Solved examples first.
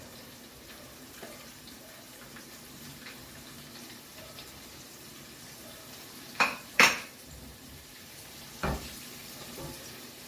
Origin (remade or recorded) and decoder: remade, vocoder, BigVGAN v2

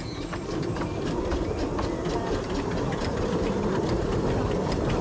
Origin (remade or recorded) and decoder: recorded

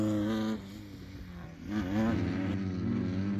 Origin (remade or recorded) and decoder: recorded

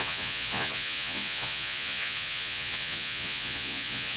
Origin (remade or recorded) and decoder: remade, vocoder, Vocos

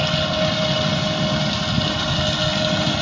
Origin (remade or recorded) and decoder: recorded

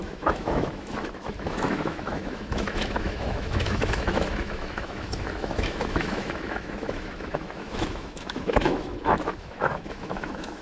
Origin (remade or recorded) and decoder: remade, autoencoder, DAC-VAE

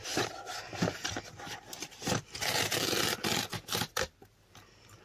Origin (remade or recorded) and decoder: remade, vocoder, BigVGAN v2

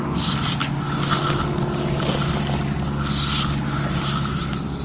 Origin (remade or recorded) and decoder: recorded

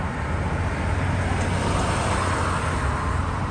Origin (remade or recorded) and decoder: recorded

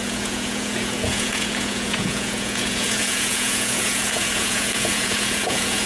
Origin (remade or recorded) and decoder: remade, vocoder, Vocos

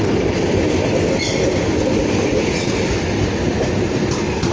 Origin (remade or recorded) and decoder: recorded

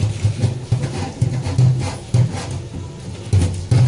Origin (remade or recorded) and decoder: recorded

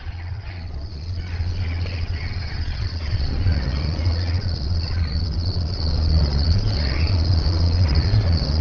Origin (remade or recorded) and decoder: remade, vocoder, Vocos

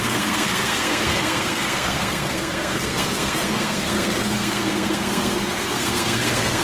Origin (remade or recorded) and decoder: remade, codec, SNAC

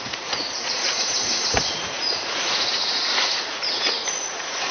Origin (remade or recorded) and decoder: remade, vocoder, Vocos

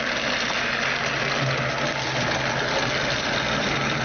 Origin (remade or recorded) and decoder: recorded